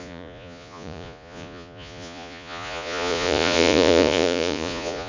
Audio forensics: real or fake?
fake